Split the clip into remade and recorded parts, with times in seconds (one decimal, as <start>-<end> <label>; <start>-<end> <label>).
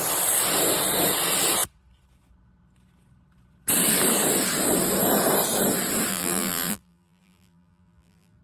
0.0-6.1 recorded; 6.1-8.4 remade